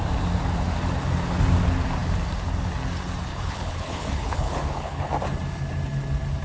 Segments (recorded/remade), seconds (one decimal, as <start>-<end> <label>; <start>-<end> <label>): 0.0-3.3 recorded; 3.3-5.1 remade; 5.1-6.4 recorded